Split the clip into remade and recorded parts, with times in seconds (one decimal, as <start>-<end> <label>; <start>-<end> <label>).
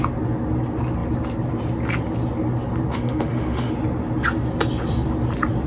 0.0-2.9 recorded; 2.9-3.7 remade; 3.7-5.7 recorded